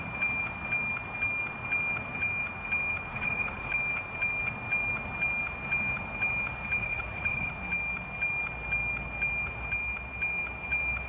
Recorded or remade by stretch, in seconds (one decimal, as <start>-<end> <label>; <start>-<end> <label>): 0.0-3.1 recorded; 3.1-3.7 remade; 3.7-6.8 recorded; 6.8-7.5 remade; 7.5-11.1 recorded